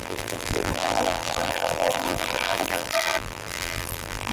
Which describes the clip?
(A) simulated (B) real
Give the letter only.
A